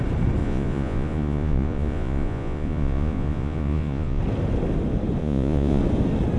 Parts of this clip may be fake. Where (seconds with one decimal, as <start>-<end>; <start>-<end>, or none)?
0.4-4.2; 5.2-5.8